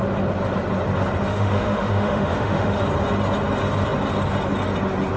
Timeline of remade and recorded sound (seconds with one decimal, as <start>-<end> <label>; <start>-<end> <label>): 0.0-1.3 recorded; 1.3-2.8 remade; 2.8-5.2 recorded